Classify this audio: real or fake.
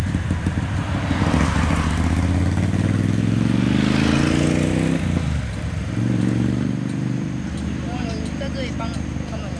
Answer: real